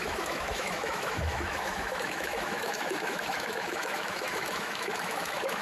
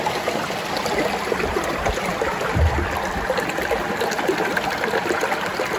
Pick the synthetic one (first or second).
first